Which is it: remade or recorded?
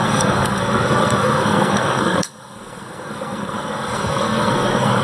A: remade